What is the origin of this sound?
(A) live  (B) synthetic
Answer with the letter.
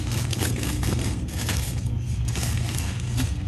B